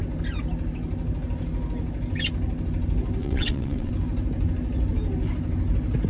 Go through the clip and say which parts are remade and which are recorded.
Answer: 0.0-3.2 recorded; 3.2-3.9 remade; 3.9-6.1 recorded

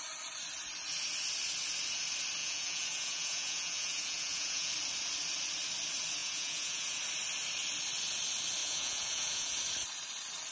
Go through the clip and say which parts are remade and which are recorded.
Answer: 0.0-2.4 recorded; 2.4-4.7 remade; 4.7-6.2 recorded; 6.2-7.0 remade; 7.0-8.6 recorded; 8.6-9.6 remade; 9.6-10.5 recorded

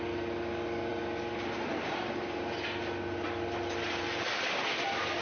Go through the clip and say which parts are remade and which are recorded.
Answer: 0.0-5.2 recorded

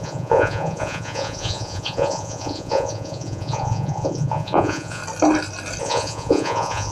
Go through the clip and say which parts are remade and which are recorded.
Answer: 0.0-5.0 remade; 5.0-5.8 recorded; 5.8-6.9 remade

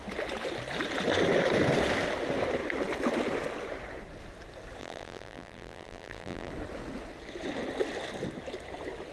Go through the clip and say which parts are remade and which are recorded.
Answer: 0.0-4.8 recorded; 4.8-6.5 remade; 6.5-9.1 recorded

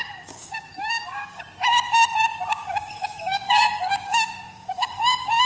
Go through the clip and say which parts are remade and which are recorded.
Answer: 0.0-1.4 remade; 1.4-2.5 recorded; 2.5-5.5 remade

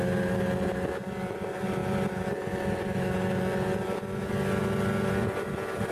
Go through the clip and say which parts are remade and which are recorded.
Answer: 0.0-5.9 recorded